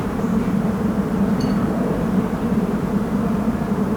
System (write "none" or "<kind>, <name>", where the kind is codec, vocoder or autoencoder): vocoder, BigVGAN v2